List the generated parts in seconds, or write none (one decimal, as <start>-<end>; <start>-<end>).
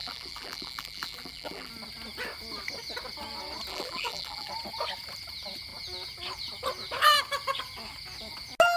0.0-1.7; 3.7-4.5